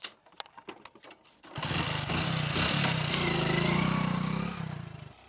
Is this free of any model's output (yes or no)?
yes